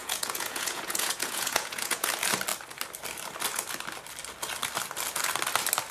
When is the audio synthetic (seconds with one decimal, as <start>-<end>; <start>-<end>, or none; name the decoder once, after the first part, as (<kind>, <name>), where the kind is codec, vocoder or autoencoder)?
0.0-2.1 (vocoder, Vocos)